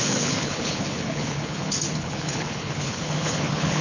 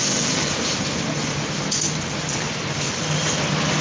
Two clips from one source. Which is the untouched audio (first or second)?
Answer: second